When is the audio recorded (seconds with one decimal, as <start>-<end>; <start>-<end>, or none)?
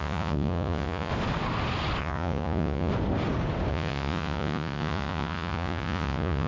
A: 1.1-2.0; 2.9-3.7